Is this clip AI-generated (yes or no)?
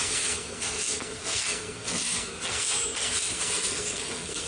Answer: yes